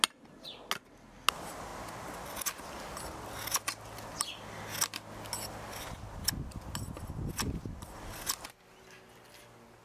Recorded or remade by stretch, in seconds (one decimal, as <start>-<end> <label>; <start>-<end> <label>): 0.0-9.8 recorded